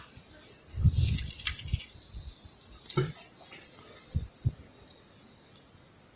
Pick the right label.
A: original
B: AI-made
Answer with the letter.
A